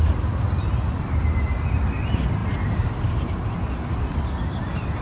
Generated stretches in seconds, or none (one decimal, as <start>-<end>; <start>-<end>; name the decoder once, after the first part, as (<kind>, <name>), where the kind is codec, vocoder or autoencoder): none